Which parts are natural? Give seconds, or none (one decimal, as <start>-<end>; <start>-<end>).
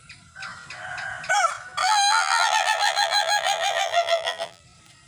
0.0-1.8; 4.6-5.1